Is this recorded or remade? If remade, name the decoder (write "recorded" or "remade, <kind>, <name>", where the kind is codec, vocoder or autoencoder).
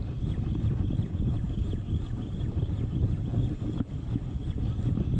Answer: recorded